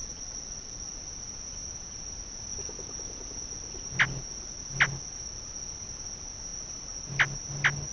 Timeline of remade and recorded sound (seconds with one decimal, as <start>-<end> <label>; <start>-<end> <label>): 0.0-0.9 remade; 0.9-7.9 recorded